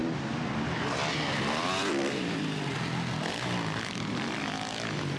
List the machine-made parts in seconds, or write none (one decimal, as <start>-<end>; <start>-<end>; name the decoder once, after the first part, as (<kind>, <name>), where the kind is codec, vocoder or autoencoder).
none